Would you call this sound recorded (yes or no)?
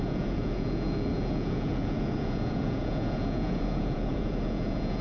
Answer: no